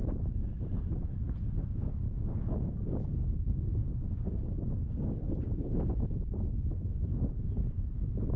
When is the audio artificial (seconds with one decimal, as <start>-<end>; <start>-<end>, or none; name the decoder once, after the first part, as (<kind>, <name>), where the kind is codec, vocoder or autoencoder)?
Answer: 1.7-8.4 (codec, DAC)